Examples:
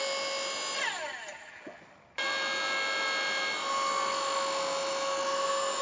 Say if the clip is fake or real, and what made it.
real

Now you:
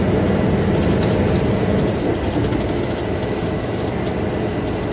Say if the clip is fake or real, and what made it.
real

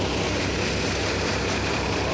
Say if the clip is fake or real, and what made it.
real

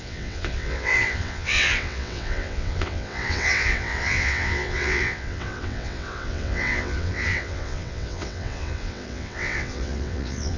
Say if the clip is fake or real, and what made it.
fake, vocoder, WaveNeXt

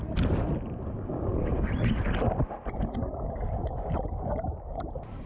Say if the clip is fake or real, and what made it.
real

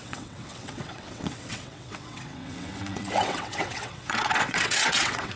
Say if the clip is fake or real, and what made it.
fake, vocoder, WaveNeXt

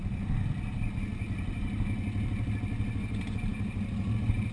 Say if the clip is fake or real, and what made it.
real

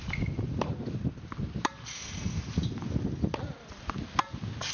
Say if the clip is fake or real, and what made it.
real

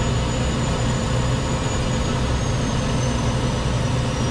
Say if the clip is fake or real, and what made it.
real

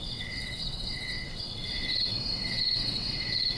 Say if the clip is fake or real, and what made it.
fake, vocoder, WaveNeXt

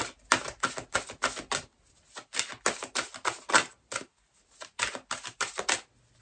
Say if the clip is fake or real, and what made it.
real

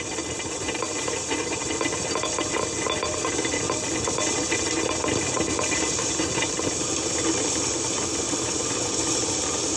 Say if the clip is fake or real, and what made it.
real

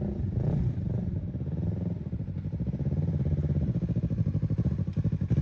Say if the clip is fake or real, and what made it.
real